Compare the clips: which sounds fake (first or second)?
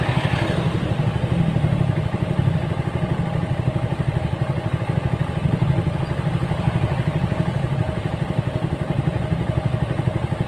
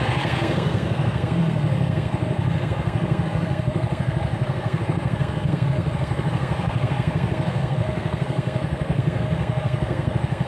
second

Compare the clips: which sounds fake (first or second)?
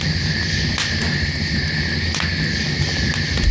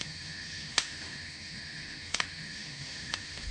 second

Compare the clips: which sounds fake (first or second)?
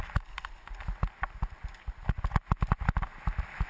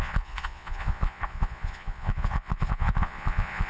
second